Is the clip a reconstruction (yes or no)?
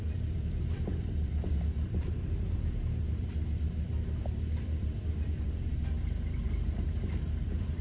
yes